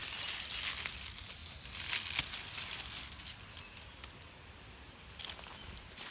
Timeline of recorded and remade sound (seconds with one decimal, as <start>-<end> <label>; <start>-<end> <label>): 0.0-6.1 recorded